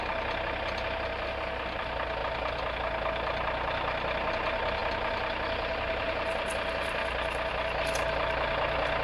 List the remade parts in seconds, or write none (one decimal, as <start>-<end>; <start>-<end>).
none